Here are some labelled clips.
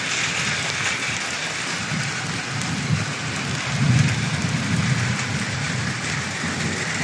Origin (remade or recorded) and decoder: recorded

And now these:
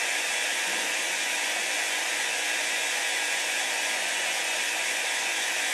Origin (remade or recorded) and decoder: remade, vocoder, Vocos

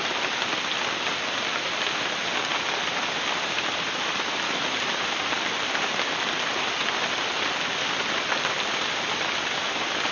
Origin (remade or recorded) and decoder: recorded